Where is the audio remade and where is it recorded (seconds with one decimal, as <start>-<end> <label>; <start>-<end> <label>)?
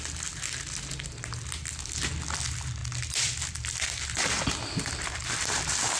0.0-6.0 recorded